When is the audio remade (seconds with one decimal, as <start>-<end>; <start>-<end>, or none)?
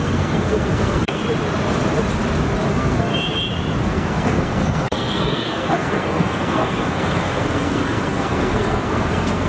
0.0-1.2; 2.7-3.1; 3.8-9.5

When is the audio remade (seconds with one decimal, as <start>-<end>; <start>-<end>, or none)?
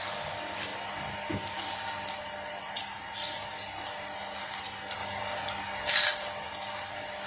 none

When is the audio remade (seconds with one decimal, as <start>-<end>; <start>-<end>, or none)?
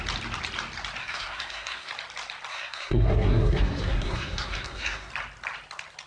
1.0-1.9; 2.5-5.1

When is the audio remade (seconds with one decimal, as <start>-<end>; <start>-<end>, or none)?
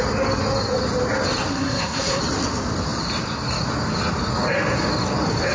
1.5-2.2